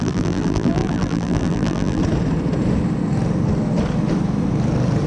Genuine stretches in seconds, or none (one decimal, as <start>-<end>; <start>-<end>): 2.0-5.1